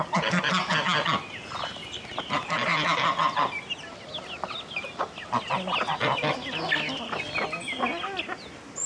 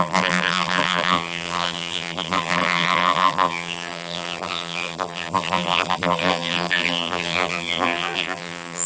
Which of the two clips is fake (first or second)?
second